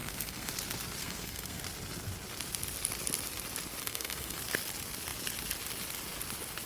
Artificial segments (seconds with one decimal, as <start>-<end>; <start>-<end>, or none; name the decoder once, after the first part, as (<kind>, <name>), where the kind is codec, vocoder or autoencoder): 0.0-0.5 (codec, SNAC); 1.0-1.6; 3.8-4.4